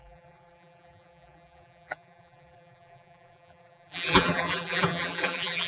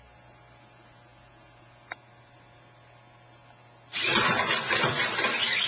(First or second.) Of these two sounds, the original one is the second